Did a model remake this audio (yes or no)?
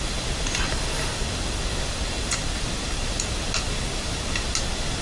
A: no